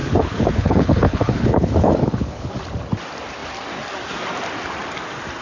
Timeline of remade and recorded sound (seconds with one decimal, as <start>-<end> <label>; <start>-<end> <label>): 0.0-2.5 remade; 2.5-5.4 recorded